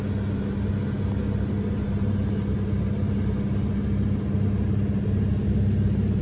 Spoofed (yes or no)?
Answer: no